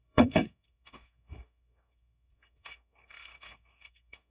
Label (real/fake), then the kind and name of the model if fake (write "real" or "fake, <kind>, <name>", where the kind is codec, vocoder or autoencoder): fake, codec, SNAC